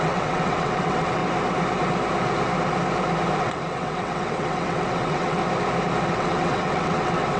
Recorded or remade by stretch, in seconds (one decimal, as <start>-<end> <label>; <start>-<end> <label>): 0.0-1.2 remade; 1.2-3.4 recorded; 3.4-5.4 remade; 5.4-6.1 recorded; 6.1-7.4 remade